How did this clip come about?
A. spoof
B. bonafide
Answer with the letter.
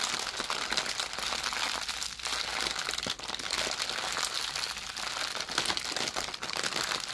B